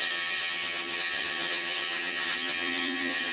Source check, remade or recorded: remade